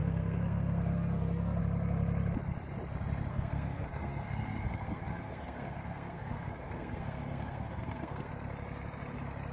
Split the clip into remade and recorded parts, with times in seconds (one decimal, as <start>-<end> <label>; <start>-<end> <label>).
0.0-1.6 remade; 1.6-3.3 recorded; 3.3-8.3 remade; 8.3-9.5 recorded